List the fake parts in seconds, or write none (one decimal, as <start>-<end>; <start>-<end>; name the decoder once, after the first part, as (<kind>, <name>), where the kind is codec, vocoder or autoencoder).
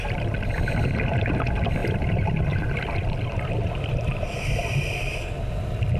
none